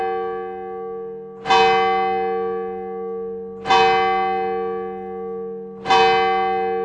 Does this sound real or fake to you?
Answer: real